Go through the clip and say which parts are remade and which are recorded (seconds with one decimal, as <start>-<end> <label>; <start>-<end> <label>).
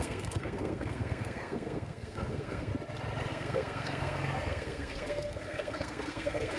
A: 0.0-2.7 remade; 2.7-3.3 recorded; 3.3-6.6 remade